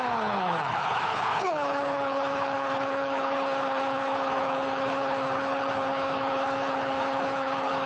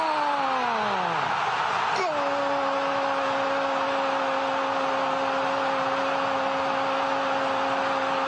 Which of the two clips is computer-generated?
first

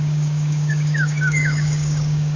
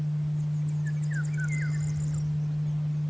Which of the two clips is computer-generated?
first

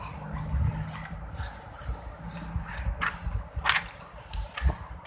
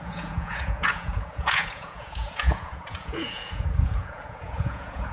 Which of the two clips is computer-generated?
second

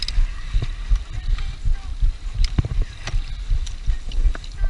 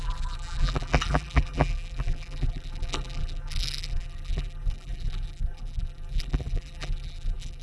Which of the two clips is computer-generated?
second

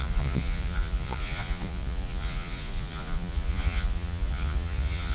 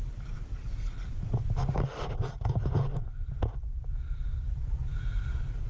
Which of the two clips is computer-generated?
first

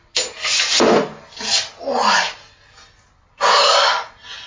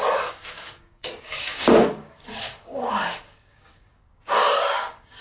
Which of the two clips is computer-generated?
second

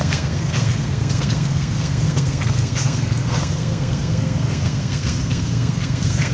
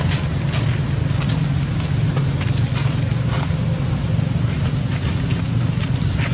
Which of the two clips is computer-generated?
first